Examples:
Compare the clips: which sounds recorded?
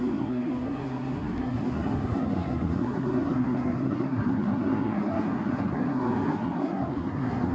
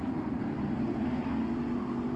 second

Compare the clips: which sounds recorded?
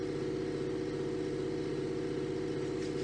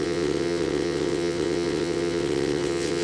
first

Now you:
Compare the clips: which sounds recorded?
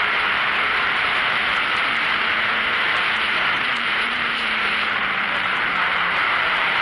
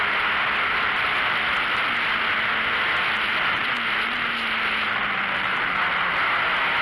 second